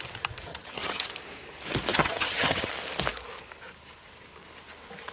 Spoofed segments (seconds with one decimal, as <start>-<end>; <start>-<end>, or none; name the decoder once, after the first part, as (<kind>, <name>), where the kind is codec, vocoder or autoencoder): 0.5-1.1 (vocoder, HiFi-GAN); 1.9-2.7